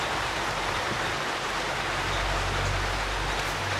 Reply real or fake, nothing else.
real